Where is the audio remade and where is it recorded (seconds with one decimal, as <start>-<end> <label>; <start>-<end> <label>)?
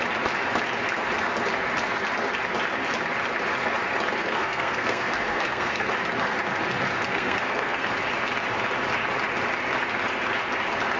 0.0-4.2 recorded; 4.2-5.9 remade; 5.9-7.1 recorded; 7.1-7.9 remade; 7.9-11.0 recorded